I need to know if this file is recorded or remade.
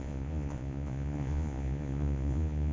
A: remade